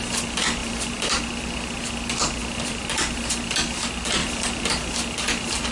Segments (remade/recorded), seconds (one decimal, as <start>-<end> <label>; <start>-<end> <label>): 0.0-0.6 recorded; 0.6-1.2 remade; 1.2-2.4 recorded; 2.4-3.0 remade; 3.0-4.2 recorded; 4.2-4.7 remade; 4.7-5.7 recorded